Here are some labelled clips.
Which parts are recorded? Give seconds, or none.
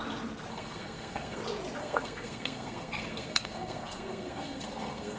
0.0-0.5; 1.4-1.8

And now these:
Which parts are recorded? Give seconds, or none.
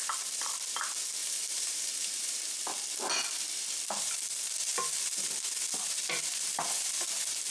0.0-1.2; 2.4-7.5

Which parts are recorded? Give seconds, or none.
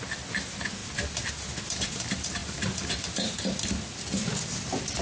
0.0-5.0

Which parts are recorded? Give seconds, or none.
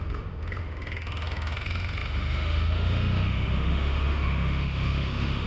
none